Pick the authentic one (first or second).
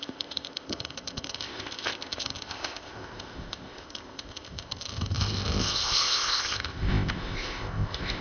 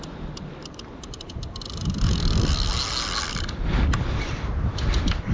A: second